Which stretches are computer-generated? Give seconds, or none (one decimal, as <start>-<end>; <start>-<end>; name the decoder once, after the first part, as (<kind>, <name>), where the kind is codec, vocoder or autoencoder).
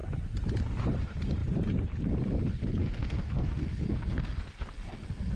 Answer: 2.8-4.5 (codec, SNAC)